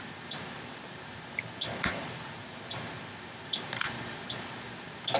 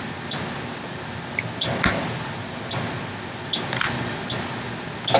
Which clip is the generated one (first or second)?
first